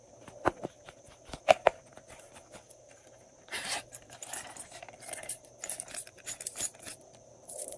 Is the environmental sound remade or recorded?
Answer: remade